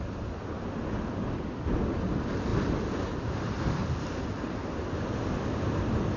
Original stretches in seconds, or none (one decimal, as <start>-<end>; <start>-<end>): 0.0-6.2